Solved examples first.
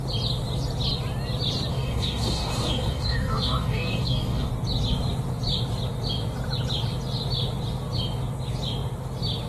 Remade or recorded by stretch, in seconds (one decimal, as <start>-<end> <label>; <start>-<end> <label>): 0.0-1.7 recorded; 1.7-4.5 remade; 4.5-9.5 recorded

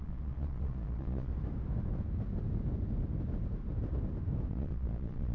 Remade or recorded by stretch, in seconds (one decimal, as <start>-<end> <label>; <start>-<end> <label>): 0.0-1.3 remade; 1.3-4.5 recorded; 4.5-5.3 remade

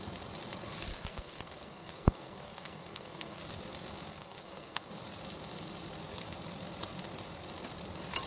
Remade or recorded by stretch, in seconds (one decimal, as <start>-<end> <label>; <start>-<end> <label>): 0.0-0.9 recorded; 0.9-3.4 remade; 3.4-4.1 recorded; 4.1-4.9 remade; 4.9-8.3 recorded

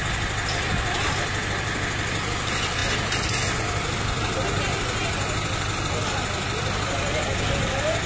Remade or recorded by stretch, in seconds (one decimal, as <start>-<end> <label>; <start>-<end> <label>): 0.0-8.1 recorded

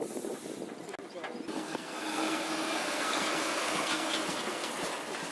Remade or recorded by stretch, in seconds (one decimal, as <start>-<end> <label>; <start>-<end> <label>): 0.0-1.5 recorded; 1.5-4.7 remade; 4.7-5.3 recorded

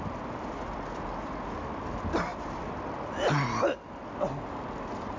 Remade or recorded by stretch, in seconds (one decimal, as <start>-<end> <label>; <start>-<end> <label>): 0.0-5.2 recorded

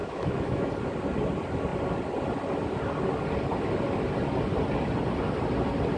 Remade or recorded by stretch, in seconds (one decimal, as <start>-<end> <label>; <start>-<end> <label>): 0.0-0.7 remade; 0.7-6.0 recorded